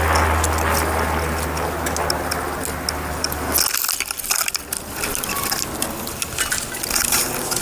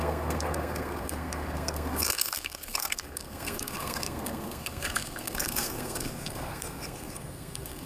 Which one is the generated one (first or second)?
second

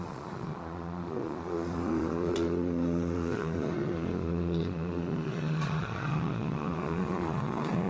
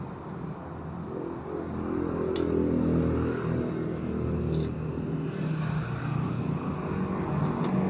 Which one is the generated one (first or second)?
first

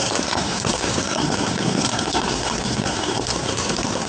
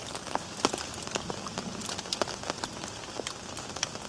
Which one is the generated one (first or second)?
first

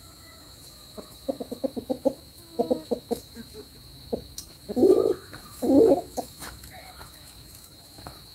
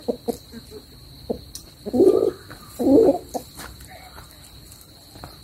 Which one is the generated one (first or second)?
first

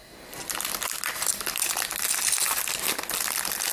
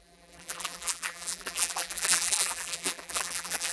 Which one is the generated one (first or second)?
second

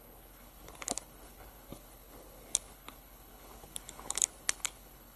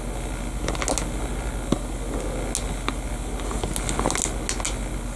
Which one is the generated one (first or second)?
first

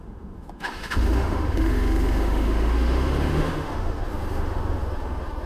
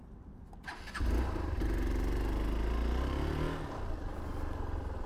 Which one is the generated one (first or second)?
first